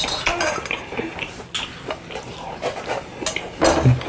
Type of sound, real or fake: real